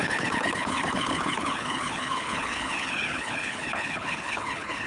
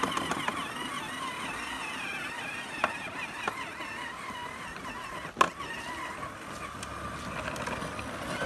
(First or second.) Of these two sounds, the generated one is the first